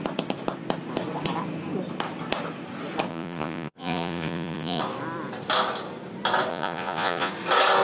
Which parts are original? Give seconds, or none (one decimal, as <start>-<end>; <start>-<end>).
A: 0.0-3.1; 4.8-6.5; 7.3-7.8